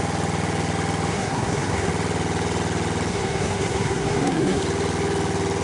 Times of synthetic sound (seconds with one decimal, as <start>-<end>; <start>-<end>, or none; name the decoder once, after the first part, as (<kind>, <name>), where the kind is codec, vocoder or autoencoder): 1.1-1.9 (codec, SNAC); 3.1-4.6